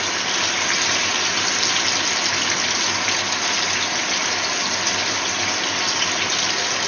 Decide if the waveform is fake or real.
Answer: real